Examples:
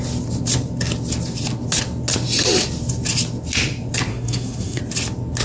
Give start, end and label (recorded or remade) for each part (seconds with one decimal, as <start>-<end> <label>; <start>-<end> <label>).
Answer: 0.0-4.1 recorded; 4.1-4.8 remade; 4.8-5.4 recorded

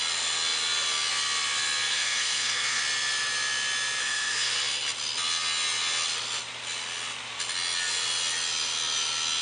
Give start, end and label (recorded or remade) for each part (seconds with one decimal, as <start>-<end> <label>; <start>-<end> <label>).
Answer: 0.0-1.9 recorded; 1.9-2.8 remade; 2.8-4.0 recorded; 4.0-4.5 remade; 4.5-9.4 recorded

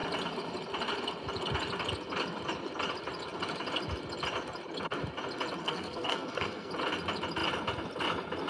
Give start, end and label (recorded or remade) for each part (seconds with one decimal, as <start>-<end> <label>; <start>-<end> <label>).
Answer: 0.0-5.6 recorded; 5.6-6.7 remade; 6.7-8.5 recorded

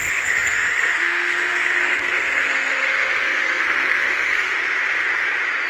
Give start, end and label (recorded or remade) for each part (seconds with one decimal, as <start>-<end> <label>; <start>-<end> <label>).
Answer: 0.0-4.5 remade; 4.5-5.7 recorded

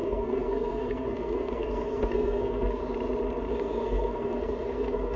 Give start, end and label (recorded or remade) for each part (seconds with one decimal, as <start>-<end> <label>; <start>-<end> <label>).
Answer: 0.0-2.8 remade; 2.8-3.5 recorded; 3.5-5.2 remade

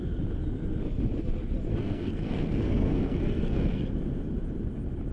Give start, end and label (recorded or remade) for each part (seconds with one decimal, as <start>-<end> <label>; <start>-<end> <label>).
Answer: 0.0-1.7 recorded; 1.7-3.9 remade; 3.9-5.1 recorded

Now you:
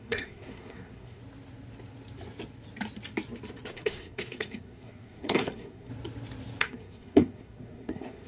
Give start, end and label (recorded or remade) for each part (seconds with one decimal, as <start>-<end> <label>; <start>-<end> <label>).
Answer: 0.0-1.2 remade; 1.2-3.7 recorded; 3.7-5.9 remade; 5.9-6.6 recorded; 6.6-8.3 remade

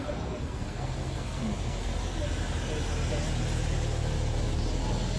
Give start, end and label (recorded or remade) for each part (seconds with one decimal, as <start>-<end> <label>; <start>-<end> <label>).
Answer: 0.0-1.9 remade; 1.9-5.2 recorded